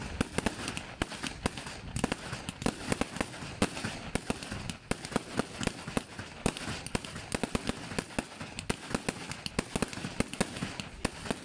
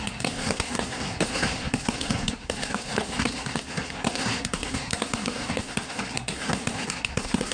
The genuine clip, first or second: first